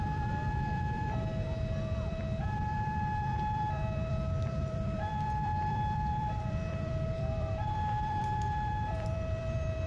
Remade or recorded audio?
remade